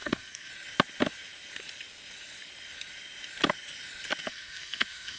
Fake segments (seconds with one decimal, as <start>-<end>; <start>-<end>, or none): 0.0-0.5; 4.3-5.2